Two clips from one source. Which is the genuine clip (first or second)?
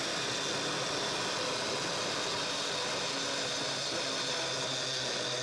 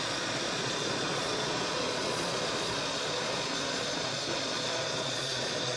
first